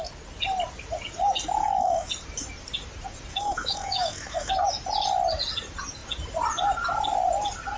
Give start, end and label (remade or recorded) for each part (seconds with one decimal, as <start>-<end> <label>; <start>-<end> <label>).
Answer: 0.0-1.6 recorded; 1.6-2.1 remade; 2.1-3.3 recorded; 3.3-4.5 remade; 4.5-7.8 recorded